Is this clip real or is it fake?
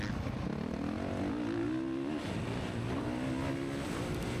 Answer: real